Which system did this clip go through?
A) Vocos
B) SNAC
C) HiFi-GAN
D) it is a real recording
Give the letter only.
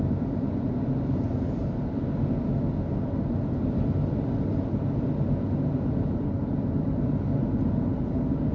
D